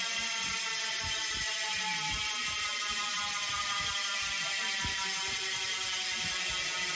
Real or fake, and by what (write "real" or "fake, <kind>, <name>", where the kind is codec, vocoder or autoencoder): real